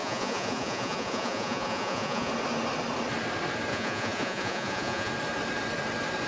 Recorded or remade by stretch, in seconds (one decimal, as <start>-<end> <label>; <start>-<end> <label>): 0.0-2.3 remade; 2.3-3.7 recorded; 3.7-5.1 remade; 5.1-6.3 recorded